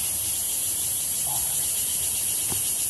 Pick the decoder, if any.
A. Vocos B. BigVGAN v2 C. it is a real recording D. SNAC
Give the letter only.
B